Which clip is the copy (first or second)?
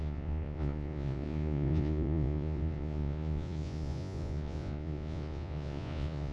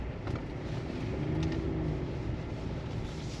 first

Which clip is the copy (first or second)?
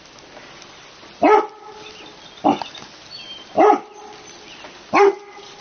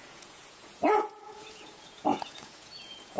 second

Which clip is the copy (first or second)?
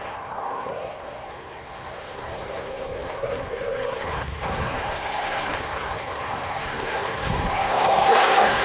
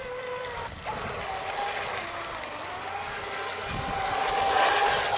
first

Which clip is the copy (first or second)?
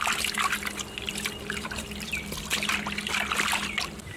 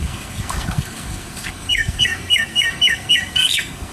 second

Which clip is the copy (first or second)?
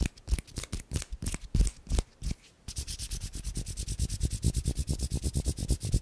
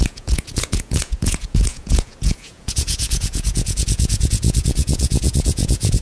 second